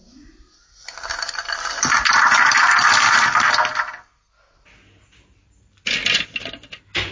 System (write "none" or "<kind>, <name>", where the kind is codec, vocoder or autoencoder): none